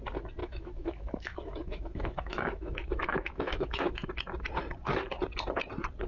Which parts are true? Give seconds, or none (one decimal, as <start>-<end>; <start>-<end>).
0.0-0.4; 4.1-6.1